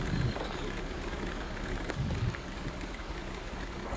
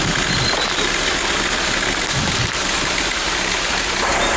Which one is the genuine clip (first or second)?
second